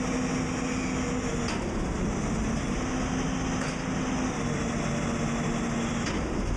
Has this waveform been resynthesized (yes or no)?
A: no